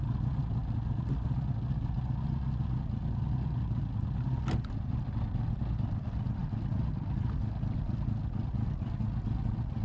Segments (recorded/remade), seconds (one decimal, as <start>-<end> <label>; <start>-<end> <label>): 0.0-9.8 recorded